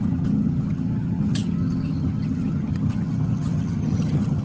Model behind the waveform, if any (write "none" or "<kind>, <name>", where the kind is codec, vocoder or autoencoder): vocoder, HiFi-GAN